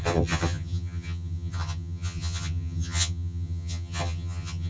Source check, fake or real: fake